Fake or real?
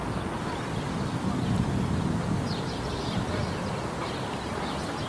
real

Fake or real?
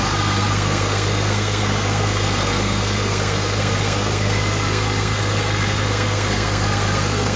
fake